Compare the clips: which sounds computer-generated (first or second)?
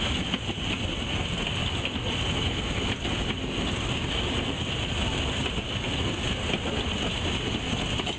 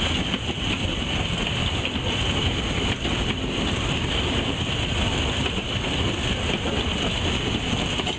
second